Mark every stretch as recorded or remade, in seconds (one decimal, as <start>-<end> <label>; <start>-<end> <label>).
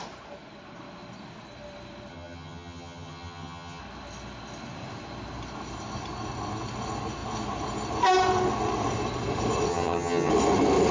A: 0.0-2.1 recorded; 2.1-3.8 remade; 3.8-9.7 recorded; 9.7-10.3 remade; 10.3-10.9 recorded